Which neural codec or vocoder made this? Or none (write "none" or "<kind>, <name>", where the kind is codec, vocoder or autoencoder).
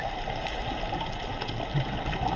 none